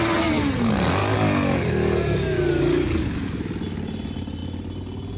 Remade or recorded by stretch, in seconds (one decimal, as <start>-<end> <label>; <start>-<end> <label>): 0.0-1.0 recorded; 1.0-3.4 remade; 3.4-5.2 recorded